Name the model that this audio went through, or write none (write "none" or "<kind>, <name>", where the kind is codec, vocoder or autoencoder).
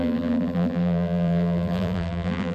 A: vocoder, BigVGAN v2